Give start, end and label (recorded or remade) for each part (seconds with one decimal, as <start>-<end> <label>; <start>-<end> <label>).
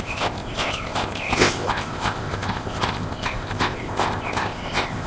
0.0-5.1 remade